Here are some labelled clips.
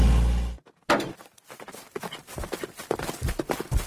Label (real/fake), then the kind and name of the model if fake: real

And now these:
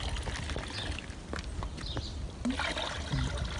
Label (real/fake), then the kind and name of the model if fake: real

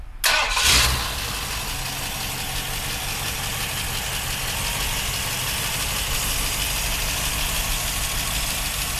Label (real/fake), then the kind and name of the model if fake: real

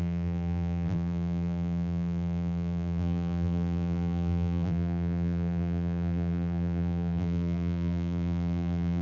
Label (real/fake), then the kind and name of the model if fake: fake, vocoder, BigVGAN v2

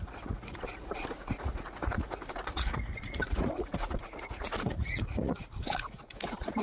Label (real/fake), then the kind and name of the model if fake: fake, vocoder, Vocos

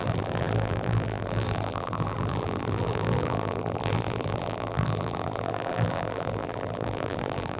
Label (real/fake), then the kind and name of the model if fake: fake, vocoder, BigVGAN v2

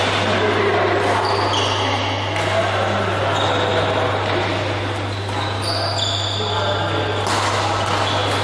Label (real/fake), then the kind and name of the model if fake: real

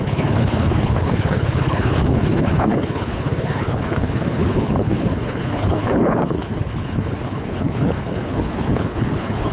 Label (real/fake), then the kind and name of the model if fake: fake, codec, HILCodec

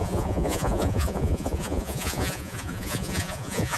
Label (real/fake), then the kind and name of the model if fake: fake, vocoder, Vocos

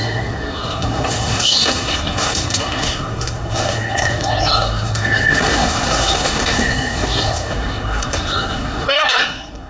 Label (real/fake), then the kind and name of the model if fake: fake, codec, SNAC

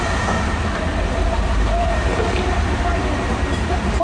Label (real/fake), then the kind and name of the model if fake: fake, vocoder, BigVGAN v2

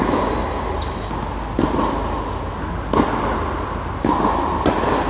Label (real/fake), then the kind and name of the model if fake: real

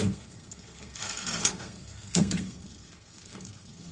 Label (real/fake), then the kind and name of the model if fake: fake, codec, SNAC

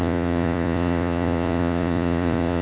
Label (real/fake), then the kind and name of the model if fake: fake, vocoder, Vocos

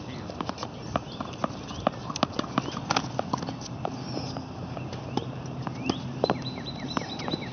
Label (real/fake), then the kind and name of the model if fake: real